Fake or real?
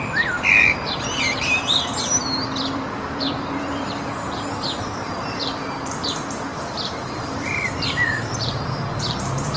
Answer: fake